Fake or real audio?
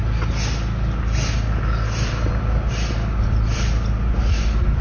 real